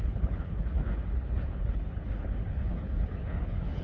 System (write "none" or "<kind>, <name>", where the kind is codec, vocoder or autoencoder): codec, HILCodec